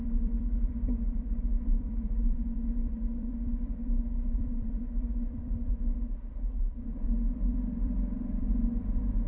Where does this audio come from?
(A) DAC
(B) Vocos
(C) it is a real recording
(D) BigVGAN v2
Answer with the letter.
D